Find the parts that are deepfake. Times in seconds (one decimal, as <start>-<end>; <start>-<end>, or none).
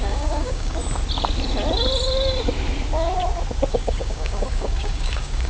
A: 0.0-0.8; 3.7-5.5